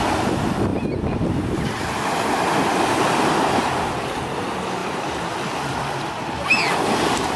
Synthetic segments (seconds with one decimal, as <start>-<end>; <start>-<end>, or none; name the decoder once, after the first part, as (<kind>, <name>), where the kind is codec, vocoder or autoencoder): none